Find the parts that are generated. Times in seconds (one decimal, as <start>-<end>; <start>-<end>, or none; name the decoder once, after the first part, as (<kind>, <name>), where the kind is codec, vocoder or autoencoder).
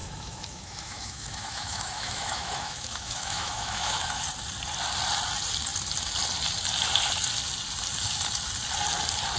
0.0-4.2 (autoencoder, DAC-VAE)